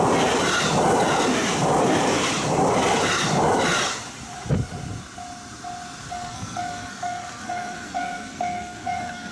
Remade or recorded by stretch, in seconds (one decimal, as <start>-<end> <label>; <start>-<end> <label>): 0.0-6.0 recorded; 6.0-9.3 remade